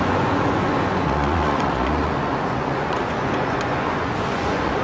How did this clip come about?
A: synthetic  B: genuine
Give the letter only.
A